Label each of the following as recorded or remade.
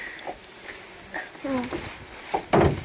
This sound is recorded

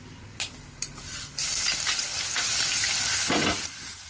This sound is recorded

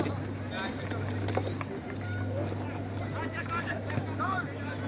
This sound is recorded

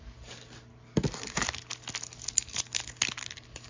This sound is recorded